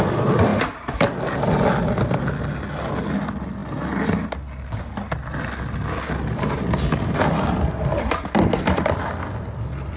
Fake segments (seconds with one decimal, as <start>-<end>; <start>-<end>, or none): none